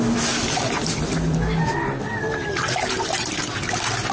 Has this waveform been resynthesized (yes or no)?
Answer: no